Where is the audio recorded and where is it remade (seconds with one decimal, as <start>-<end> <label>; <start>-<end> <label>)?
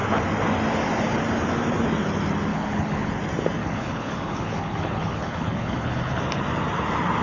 0.0-2.5 recorded; 2.5-3.1 remade; 3.1-3.6 recorded; 3.6-6.2 remade; 6.2-7.2 recorded